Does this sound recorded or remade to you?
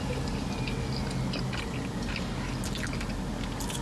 recorded